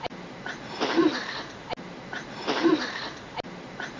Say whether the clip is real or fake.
real